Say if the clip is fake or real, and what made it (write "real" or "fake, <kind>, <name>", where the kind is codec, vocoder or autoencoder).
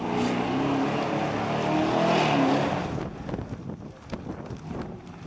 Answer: real